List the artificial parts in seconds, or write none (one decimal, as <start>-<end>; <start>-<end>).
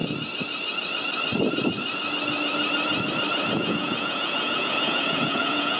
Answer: 3.5-5.8